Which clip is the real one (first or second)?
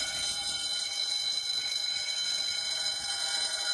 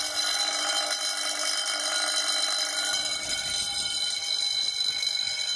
second